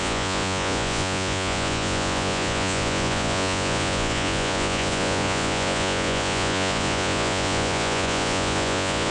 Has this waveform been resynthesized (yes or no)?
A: yes